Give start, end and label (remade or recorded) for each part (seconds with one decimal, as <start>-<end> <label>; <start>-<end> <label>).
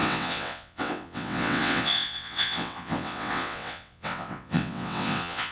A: 0.0-5.5 remade